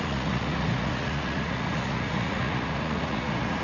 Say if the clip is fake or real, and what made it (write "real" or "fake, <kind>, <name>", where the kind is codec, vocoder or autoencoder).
fake, vocoder, Vocos